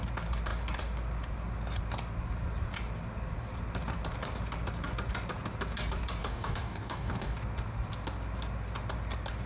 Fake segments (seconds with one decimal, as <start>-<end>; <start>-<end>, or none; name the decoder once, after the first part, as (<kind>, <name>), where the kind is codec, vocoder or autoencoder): 6.2-7.4 (codec, DAC)